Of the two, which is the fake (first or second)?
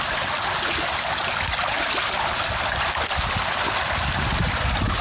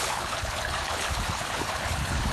second